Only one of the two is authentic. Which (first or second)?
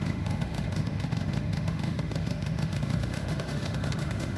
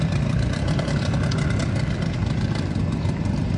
second